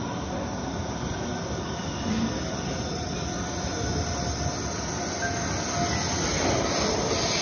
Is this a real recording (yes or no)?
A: yes